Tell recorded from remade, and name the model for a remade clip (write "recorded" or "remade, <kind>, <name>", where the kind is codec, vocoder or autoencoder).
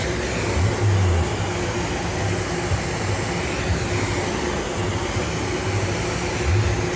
recorded